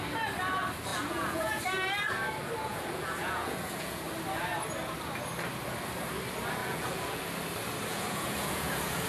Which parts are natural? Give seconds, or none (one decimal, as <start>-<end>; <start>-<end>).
0.0-0.9; 1.6-2.7; 4.0-6.6; 7.2-7.9